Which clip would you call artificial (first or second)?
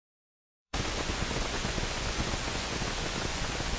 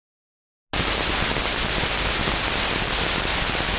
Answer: first